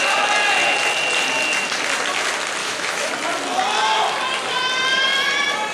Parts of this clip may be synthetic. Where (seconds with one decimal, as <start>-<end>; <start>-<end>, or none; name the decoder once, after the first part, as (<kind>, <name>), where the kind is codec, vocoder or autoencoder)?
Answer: 2.6-3.1 (autoencoder, DAC-VAE)